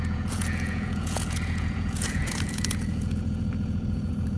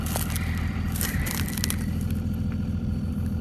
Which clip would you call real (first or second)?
second